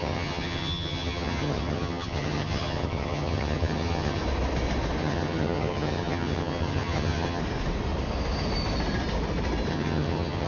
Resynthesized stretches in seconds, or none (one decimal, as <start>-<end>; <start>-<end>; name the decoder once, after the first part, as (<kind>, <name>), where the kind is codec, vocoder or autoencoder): 0.0-4.2 (vocoder, HiFi-GAN); 5.0-7.4; 9.7-10.5